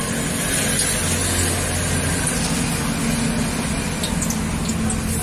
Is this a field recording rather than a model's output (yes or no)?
yes